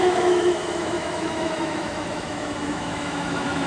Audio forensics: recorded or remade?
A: remade